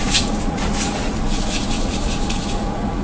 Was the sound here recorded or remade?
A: remade